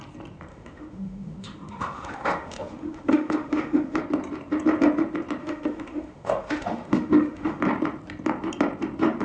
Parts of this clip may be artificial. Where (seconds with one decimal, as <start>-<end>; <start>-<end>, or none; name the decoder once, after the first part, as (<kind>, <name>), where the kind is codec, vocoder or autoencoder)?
0.5-4.0 (autoencoder, DAC-VAE); 5.4-7.6